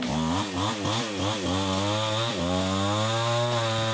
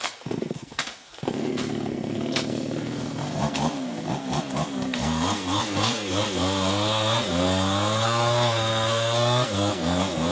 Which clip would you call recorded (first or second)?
first